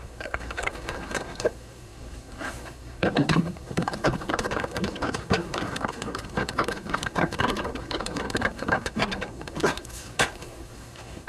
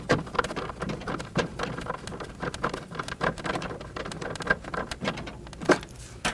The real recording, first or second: second